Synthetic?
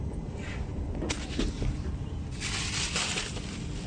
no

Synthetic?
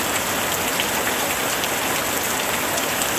no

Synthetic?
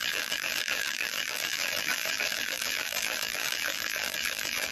yes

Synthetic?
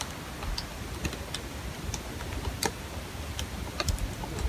no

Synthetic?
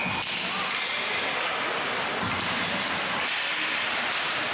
no